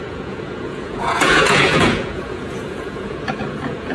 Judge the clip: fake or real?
fake